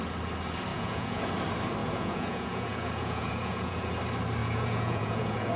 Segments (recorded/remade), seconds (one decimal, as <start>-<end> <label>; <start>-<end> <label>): 0.0-0.7 recorded; 0.7-1.3 remade; 1.3-1.8 recorded; 1.8-4.0 remade; 4.0-4.4 recorded; 4.4-5.6 remade